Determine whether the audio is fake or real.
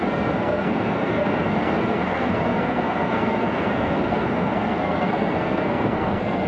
fake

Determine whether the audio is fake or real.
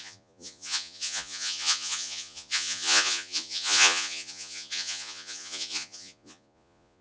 fake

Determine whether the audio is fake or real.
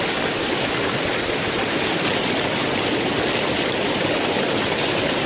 real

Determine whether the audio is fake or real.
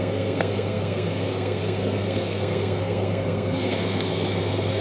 fake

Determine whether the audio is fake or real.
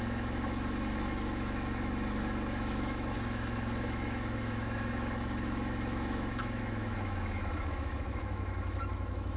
fake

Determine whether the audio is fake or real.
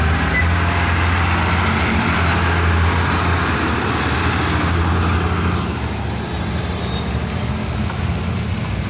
real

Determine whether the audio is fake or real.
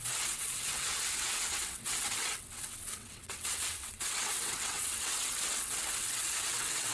fake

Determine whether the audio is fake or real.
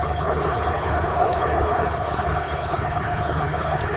fake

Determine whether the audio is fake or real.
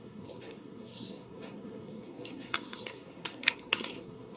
fake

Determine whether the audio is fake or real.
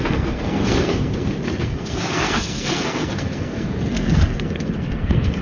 fake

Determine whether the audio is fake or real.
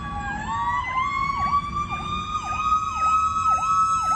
real